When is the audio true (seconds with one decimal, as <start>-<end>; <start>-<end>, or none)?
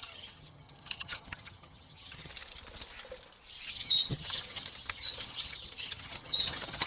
2.3-3.7